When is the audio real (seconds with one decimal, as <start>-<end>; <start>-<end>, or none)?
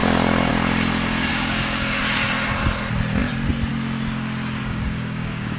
0.0-1.3; 2.0-4.6